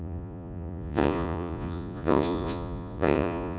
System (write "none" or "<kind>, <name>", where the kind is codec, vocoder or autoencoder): vocoder, Vocos